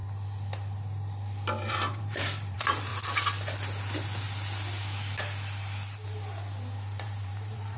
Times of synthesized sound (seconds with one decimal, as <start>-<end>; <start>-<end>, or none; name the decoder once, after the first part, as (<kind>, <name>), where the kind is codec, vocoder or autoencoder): 1.7-2.9 (vocoder, BigVGAN v2); 7.0-7.8